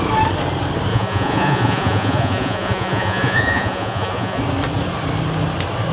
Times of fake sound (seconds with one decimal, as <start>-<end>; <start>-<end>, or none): 0.9-4.4